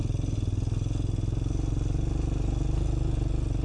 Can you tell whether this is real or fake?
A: real